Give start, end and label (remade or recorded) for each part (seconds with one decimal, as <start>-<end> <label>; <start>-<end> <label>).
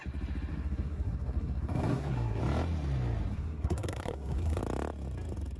0.0-0.5 recorded; 0.5-2.4 remade; 2.4-3.3 recorded; 3.3-4.6 remade; 4.6-5.6 recorded